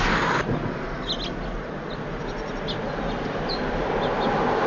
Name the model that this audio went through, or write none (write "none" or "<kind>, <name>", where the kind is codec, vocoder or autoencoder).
none